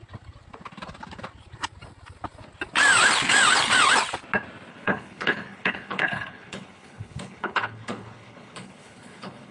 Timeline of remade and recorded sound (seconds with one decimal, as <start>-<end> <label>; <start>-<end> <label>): 0.0-4.7 recorded; 4.7-9.5 remade